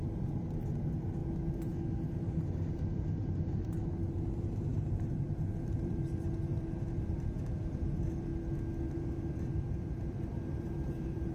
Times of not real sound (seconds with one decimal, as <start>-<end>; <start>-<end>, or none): 0.0-8.3; 8.9-11.3

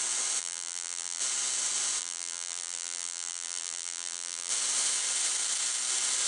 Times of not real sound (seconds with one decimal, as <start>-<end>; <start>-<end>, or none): 0.4-1.2; 2.0-4.5

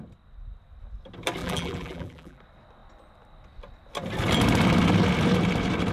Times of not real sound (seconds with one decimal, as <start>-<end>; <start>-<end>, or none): 1.4-2.4

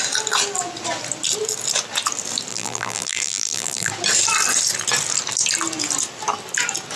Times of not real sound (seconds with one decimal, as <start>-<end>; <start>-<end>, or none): 2.5-3.9